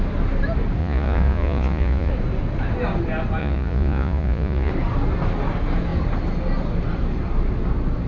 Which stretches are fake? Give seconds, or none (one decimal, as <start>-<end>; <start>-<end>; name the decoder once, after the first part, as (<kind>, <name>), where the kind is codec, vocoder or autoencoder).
0.8-2.1 (vocoder, Vocos); 3.4-4.7